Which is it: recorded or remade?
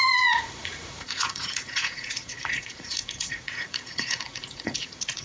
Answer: remade